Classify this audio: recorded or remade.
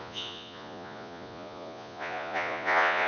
remade